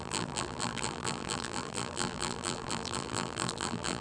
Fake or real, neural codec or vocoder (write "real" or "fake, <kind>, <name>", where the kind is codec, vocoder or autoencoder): fake, vocoder, BigVGAN v2